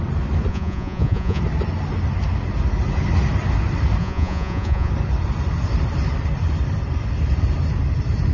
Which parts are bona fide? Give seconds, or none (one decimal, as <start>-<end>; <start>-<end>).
0.0-0.5; 1.4-4.0; 4.9-8.3